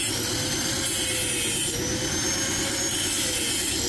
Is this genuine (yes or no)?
yes